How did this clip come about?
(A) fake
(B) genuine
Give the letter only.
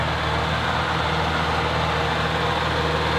B